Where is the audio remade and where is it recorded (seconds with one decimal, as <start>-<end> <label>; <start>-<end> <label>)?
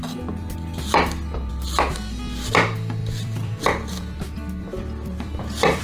0.0-3.0 recorded; 3.0-5.8 remade